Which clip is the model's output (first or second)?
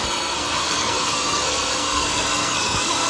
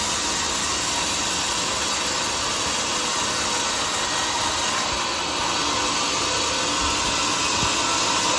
first